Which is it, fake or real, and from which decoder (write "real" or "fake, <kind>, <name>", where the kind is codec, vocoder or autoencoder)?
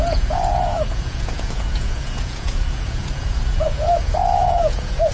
fake, vocoder, Vocos